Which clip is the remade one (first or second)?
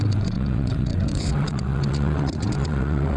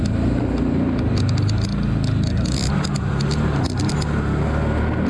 first